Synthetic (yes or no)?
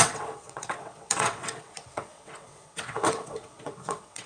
yes